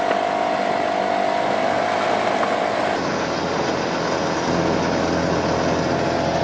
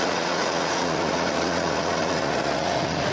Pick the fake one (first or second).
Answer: second